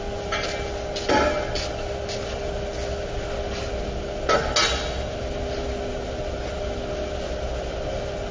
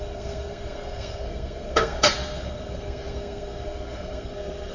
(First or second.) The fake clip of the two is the second